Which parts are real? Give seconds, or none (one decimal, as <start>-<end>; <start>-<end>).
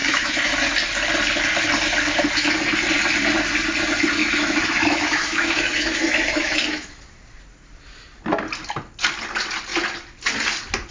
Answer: 0.5-4.2; 7.0-10.9